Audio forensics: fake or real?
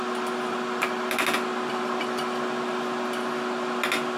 real